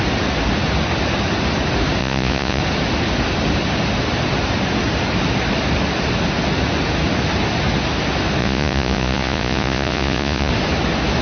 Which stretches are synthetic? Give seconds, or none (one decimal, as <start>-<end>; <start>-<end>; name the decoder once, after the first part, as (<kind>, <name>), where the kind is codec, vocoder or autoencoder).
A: 2.0-2.6 (vocoder, Vocos); 8.4-10.5